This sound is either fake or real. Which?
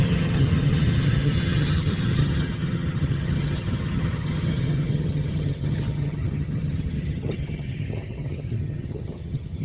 fake